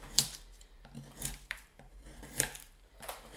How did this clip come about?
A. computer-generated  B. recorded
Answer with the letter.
A